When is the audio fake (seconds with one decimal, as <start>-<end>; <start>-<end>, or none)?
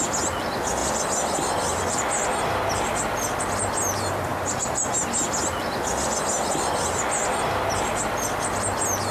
none